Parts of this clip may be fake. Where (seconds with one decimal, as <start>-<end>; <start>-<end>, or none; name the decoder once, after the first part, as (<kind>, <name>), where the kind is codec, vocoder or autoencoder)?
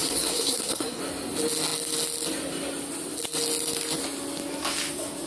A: 0.0-1.0 (codec, SNAC)